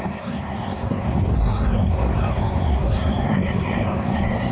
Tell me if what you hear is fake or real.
fake